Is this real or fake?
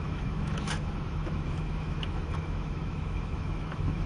fake